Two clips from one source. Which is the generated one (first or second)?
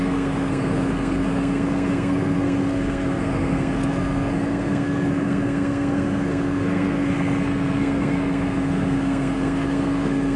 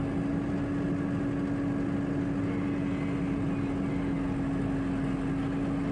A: first